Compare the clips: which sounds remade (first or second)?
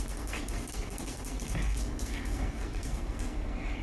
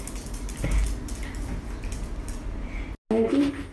first